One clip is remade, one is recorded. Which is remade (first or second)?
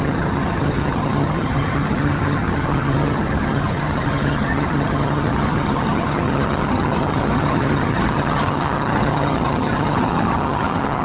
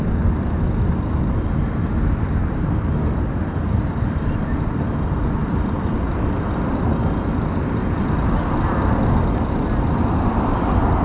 first